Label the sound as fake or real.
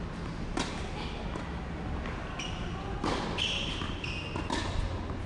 real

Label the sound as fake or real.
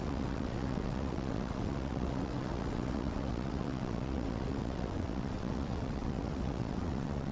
fake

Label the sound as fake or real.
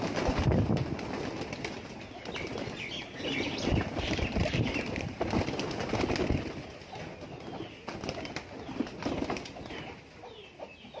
real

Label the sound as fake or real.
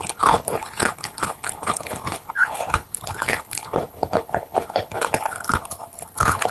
fake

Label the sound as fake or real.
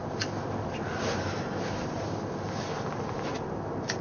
real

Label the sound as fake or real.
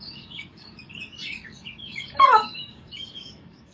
fake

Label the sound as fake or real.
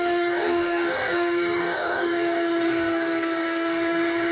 fake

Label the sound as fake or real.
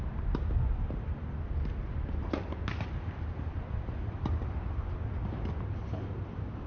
real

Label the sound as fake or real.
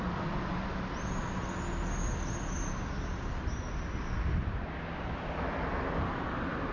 real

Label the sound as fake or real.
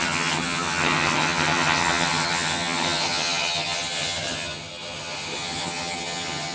fake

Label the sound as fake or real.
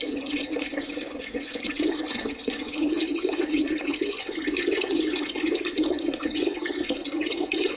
fake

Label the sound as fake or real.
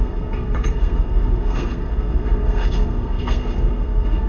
fake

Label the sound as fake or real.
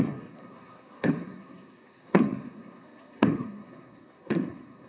fake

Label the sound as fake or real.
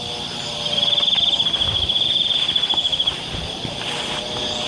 fake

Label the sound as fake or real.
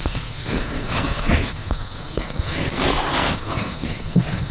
fake